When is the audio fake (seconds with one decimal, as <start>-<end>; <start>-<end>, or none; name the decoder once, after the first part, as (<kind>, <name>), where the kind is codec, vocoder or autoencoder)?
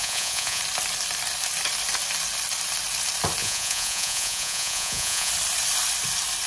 0.0-0.6 (vocoder, Vocos); 3.4-5.3